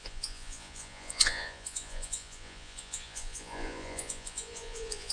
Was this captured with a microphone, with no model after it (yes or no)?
no